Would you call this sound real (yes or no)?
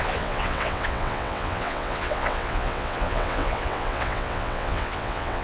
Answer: no